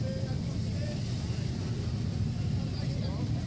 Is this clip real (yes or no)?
yes